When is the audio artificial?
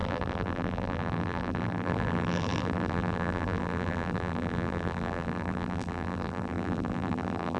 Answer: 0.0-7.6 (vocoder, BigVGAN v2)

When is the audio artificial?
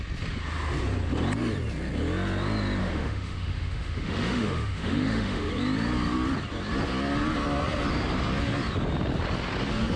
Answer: 2.8-5.5 (autoencoder, DAC-VAE)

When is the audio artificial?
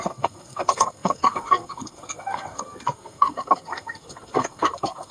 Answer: 0.0-5.1 (codec, SNAC)